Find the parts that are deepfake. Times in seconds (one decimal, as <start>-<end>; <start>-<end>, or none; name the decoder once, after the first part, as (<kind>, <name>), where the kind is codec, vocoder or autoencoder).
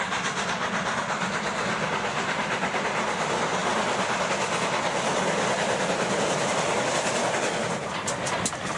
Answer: none